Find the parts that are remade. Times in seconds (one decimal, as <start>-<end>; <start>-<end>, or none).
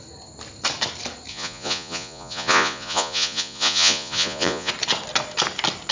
1.3-4.7